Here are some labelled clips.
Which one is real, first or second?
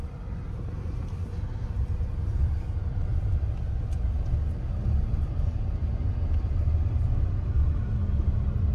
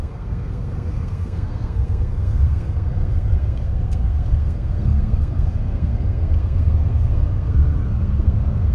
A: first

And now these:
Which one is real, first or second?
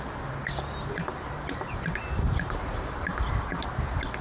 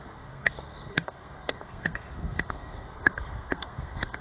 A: first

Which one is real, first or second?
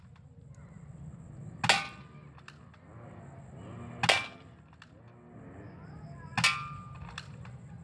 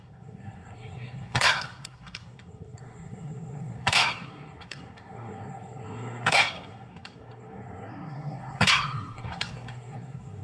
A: first